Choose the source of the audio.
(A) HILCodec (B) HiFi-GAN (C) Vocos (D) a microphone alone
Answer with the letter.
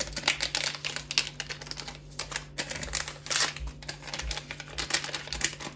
D